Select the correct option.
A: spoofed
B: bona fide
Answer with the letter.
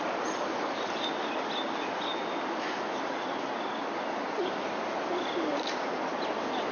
B